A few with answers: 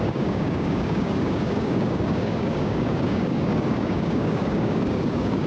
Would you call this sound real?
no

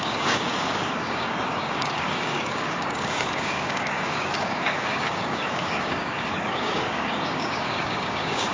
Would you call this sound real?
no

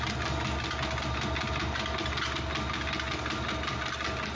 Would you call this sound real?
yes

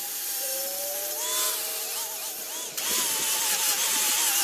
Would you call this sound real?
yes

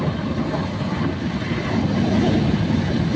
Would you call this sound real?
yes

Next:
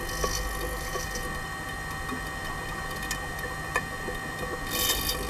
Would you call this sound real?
yes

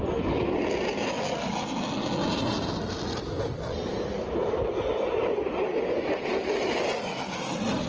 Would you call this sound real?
yes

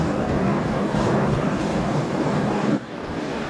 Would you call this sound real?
no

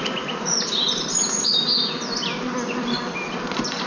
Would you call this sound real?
yes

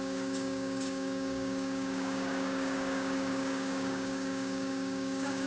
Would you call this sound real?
no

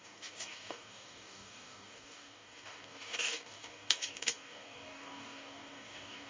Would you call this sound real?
no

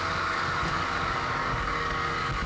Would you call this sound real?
no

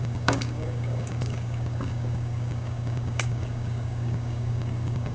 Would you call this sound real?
no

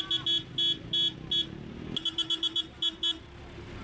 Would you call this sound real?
yes